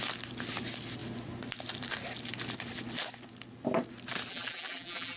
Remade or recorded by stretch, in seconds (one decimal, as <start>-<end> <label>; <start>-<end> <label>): 0.0-4.3 recorded; 4.3-5.2 remade